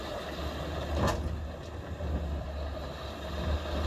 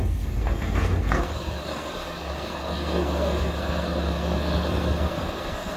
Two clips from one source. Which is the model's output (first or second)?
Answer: second